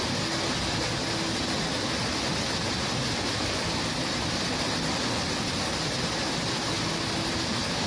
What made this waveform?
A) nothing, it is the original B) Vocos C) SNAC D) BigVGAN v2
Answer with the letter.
A